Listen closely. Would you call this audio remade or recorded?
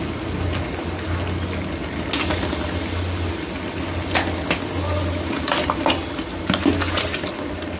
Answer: recorded